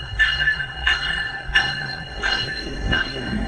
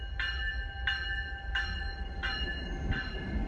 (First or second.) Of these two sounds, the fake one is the first